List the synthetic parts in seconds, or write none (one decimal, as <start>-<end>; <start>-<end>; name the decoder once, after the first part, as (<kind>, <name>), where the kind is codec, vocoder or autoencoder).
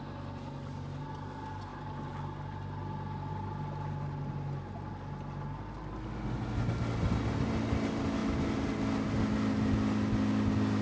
none